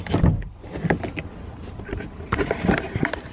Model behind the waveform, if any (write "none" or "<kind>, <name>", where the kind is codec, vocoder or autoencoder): none